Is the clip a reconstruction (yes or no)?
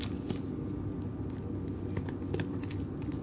no